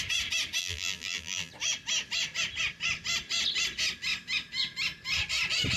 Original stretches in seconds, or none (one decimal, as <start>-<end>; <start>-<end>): 0.0-0.6; 1.5-5.8